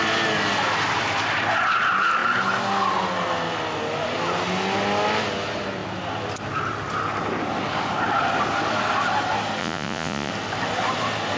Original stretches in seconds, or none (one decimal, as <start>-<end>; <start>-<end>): 0.0-9.6; 10.3-11.4